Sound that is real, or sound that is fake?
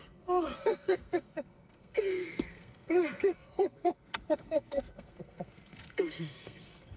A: fake